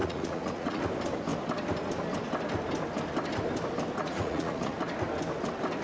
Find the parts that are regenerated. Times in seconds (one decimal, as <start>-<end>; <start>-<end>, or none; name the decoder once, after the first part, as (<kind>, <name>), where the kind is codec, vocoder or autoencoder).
0.0-0.8 (vocoder, Vocos); 4.0-4.8

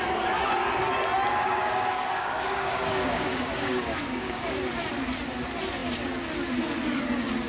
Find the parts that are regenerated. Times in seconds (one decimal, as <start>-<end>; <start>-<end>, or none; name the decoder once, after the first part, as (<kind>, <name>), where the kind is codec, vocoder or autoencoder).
1.3-4.6 (codec, DAC)